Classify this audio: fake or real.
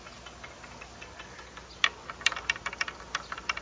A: real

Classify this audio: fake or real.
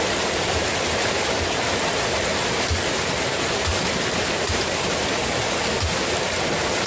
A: real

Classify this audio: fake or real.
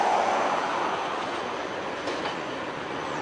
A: fake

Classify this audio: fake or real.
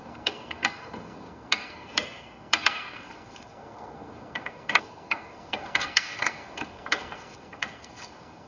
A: fake